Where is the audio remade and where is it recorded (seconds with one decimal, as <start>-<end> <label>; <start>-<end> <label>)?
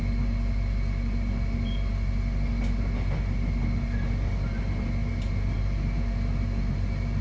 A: 0.0-7.2 recorded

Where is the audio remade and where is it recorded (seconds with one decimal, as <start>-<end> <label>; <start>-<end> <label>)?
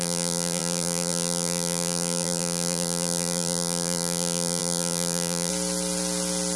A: 0.0-5.5 remade; 5.5-6.6 recorded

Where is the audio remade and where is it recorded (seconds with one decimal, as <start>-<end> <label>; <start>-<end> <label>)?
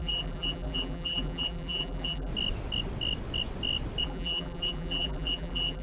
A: 0.0-2.3 remade; 2.3-4.0 recorded; 4.0-5.8 remade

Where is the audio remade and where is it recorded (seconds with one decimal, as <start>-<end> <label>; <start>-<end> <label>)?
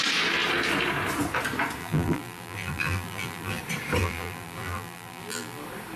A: 0.0-1.8 recorded; 1.8-3.6 remade; 3.6-4.0 recorded; 4.0-5.6 remade; 5.6-6.0 recorded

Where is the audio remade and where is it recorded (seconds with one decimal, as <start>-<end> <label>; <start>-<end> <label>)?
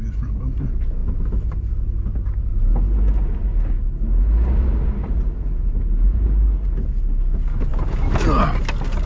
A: 0.0-5.0 recorded; 5.0-6.7 remade; 6.7-9.1 recorded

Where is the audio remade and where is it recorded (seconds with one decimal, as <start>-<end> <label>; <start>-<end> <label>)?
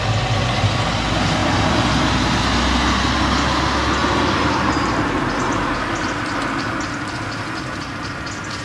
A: 0.0-1.4 recorded; 1.4-2.4 remade; 2.4-4.0 recorded; 4.0-5.8 remade; 5.8-8.6 recorded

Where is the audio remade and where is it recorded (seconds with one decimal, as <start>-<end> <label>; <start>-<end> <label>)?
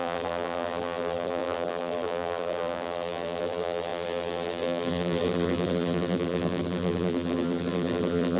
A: 0.0-8.4 remade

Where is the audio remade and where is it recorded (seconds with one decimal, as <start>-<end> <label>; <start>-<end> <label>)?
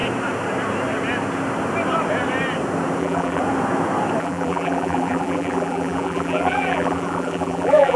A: 0.0-3.0 recorded; 3.0-3.4 remade; 3.4-4.2 recorded; 4.2-8.0 remade